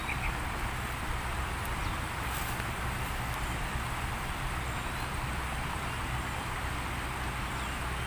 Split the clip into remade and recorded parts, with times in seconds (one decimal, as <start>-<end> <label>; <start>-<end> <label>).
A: 0.0-1.8 recorded; 1.8-6.4 remade; 6.4-8.1 recorded

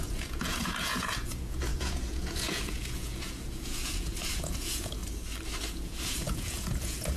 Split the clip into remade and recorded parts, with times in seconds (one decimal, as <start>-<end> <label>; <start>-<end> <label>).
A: 0.0-5.0 remade; 5.0-5.7 recorded; 5.7-7.2 remade

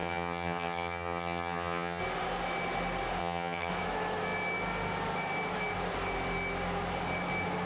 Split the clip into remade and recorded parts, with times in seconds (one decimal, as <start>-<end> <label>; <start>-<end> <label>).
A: 0.0-2.0 remade; 2.0-3.2 recorded; 3.2-3.7 remade; 3.7-7.7 recorded

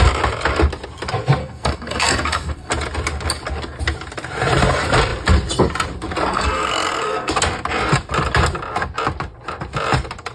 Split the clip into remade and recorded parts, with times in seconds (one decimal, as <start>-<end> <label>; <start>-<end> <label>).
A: 0.0-1.4 recorded; 1.4-2.7 remade; 2.7-6.3 recorded; 6.3-7.3 remade; 7.3-10.3 recorded